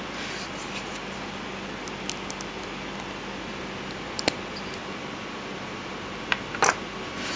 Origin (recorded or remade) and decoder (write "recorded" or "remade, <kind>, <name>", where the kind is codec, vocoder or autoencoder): recorded